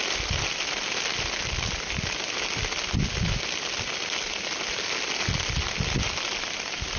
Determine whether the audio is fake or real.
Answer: real